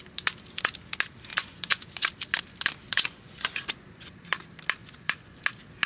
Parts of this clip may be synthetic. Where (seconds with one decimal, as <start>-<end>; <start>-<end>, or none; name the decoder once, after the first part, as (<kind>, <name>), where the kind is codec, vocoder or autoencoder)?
1.3-2.1 (vocoder, Vocos); 2.9-4.2; 4.8-5.4